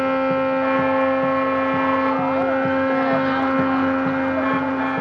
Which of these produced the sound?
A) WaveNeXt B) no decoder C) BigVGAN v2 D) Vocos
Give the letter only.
B